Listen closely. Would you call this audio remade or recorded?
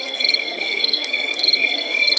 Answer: remade